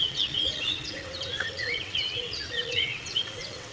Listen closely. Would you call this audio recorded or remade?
remade